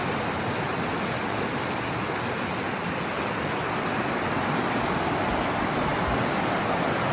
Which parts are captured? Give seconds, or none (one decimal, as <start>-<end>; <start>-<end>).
0.0-7.1